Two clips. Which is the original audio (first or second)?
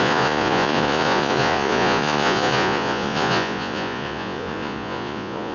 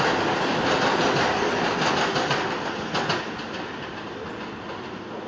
second